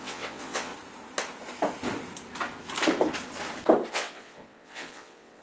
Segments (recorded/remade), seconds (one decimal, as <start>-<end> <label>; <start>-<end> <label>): 0.0-0.7 remade; 0.7-3.9 recorded; 3.9-5.4 remade